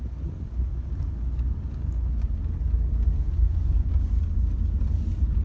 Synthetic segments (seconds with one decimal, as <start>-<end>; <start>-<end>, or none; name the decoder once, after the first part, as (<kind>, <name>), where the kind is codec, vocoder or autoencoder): none